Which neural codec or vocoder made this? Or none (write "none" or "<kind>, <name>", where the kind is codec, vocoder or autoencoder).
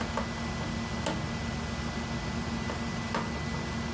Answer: none